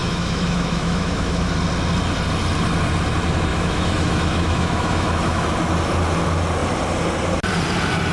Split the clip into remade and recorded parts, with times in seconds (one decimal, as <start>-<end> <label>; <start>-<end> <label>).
0.0-1.5 remade; 1.5-3.5 recorded; 3.5-5.5 remade; 5.5-8.1 recorded